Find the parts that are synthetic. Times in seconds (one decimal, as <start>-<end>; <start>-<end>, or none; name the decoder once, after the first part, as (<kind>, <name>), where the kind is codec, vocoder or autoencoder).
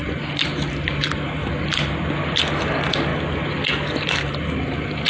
0.7-1.4 (vocoder, BigVGAN v2); 2.5-3.1; 4.0-5.1